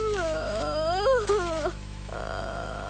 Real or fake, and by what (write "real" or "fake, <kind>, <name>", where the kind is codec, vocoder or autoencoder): fake, autoencoder, DAC-VAE